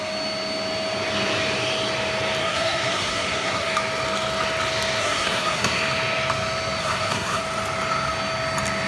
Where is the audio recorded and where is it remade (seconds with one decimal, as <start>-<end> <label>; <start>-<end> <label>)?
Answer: 0.0-2.4 recorded; 2.4-3.7 remade; 3.7-5.0 recorded; 5.0-5.8 remade; 5.8-6.8 recorded; 6.8-7.4 remade; 7.4-8.9 recorded